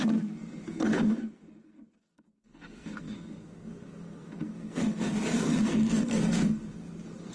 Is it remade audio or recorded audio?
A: remade